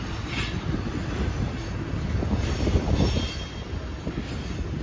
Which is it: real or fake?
real